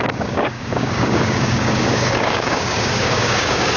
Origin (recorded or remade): remade